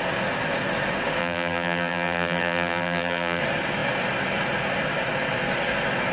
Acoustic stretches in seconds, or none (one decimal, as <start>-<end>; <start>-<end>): 0.0-1.2; 3.4-6.1